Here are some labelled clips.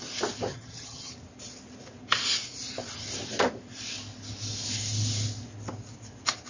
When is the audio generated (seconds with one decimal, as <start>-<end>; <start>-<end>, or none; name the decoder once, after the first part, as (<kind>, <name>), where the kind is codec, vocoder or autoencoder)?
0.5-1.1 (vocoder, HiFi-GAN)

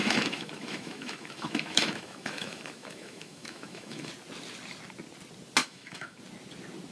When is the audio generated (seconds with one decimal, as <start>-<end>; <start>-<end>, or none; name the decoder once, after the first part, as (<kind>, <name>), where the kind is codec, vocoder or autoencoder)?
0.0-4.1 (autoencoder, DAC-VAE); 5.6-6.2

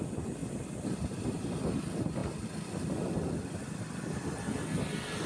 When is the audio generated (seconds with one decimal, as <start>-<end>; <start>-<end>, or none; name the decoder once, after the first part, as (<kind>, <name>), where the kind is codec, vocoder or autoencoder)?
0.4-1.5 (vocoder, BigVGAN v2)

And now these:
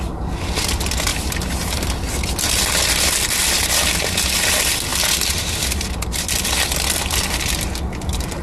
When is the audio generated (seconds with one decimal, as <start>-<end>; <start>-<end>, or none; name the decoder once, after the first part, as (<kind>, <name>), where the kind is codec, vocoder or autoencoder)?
none

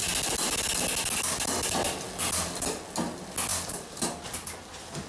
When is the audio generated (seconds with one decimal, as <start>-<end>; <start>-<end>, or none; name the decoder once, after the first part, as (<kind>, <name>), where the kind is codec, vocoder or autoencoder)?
3.5-4.0 (vocoder, BigVGAN v2)